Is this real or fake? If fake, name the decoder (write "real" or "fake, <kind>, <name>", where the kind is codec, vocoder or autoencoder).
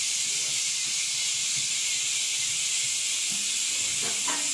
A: real